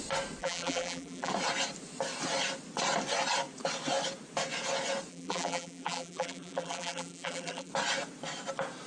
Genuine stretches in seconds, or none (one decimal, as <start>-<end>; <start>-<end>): 0.0-0.4; 1.3-5.1; 7.7-8.9